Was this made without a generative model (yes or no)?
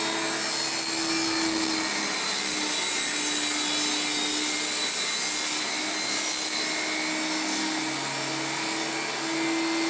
yes